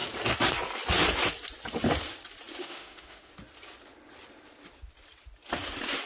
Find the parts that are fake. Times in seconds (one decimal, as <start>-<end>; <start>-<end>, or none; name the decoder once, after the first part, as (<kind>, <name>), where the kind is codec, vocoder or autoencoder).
2.6-3.3 (autoencoder, DAC-VAE)